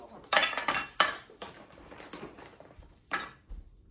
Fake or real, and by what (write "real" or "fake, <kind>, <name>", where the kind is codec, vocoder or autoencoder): fake, vocoder, BigVGAN v2